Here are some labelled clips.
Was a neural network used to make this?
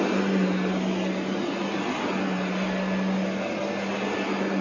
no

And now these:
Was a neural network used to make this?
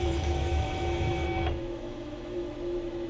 yes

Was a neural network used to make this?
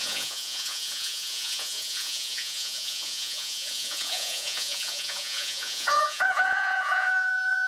yes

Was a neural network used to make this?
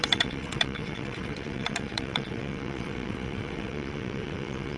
yes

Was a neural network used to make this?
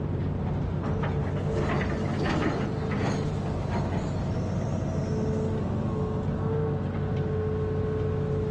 no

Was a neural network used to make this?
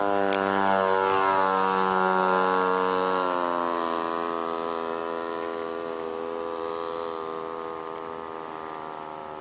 no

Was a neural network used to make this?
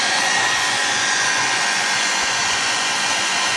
yes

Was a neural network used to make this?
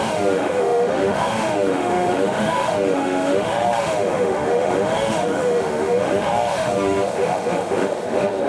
yes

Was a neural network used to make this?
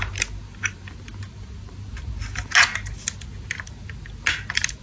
no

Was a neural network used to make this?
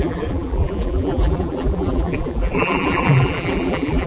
yes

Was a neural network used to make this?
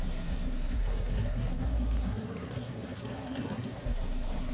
yes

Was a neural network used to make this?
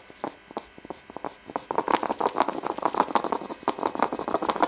no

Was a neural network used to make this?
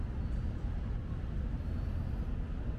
no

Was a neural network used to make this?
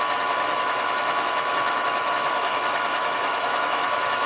yes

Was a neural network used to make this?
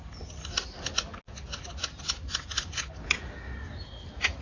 no